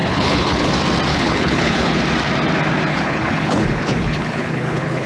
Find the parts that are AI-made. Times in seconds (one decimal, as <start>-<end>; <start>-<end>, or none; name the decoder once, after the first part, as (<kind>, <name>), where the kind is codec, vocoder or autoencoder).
0.0-0.7 (codec, HILCodec); 1.1-2.0; 2.9-5.1